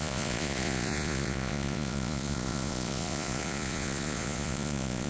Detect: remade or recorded remade